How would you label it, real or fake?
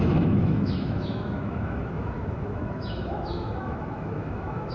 fake